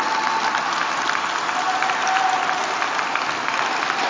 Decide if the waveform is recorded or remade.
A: recorded